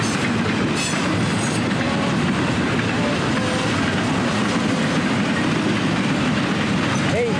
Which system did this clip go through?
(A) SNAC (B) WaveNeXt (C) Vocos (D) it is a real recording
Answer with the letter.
D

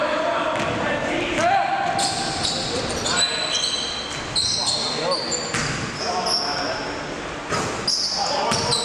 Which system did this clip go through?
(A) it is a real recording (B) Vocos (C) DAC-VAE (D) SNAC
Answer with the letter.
A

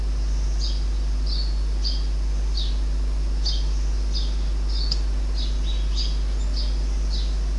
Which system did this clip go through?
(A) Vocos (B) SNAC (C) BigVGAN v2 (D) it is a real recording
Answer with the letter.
D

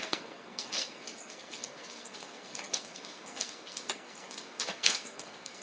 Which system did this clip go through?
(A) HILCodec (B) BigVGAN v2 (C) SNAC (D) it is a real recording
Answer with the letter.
C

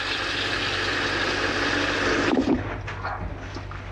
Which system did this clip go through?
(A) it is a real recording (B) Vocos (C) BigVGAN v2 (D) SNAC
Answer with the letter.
A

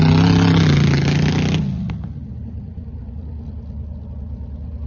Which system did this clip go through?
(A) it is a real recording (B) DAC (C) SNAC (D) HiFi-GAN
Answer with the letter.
A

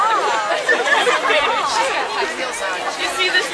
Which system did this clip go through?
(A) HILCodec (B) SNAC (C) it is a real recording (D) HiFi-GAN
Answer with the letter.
C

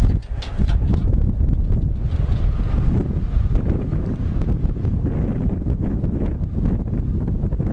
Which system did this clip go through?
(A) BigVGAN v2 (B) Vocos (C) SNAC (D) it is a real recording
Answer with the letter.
D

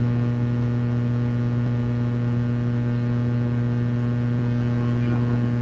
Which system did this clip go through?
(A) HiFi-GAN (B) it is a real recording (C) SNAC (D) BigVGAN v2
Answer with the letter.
B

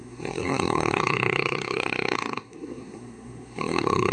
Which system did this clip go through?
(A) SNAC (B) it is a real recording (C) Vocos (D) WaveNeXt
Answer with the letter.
A